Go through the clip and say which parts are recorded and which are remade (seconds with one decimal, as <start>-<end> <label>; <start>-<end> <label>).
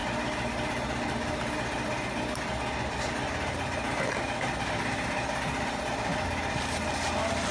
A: 0.0-7.5 recorded